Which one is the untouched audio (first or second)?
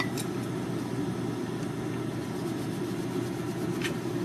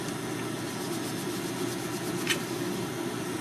second